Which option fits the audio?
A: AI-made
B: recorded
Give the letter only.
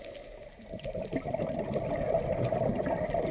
A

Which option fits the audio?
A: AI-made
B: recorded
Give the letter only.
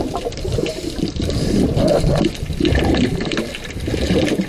B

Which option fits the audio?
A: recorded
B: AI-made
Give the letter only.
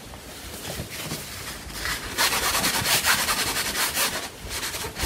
B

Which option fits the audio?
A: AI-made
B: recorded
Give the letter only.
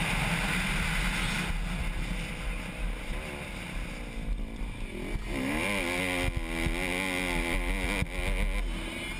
B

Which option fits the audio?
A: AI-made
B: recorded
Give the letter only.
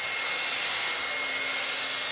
B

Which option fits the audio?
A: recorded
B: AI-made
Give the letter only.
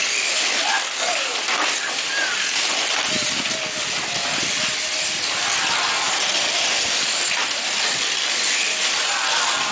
A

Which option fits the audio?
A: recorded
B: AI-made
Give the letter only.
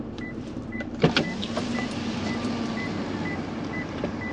B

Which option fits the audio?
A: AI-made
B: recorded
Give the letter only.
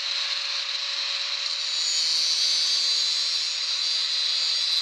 B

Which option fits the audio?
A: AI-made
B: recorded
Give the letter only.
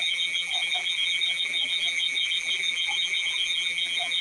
A